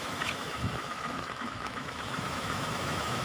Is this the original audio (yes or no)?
no